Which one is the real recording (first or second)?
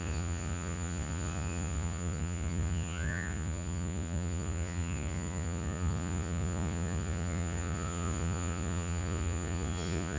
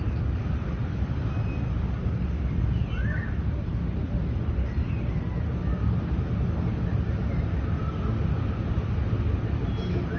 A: second